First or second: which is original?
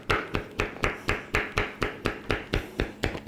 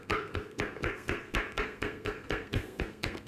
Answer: first